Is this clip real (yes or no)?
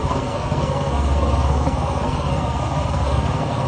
no